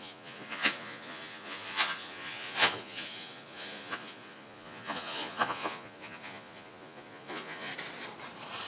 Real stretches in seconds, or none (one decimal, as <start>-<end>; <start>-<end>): 7.7-8.7